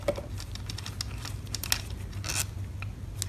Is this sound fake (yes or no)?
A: no